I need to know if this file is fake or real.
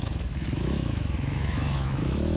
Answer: fake